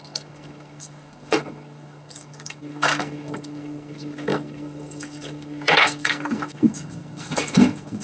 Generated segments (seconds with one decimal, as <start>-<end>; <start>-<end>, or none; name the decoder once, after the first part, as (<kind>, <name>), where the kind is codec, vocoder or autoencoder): 0.0-8.0 (codec, SNAC)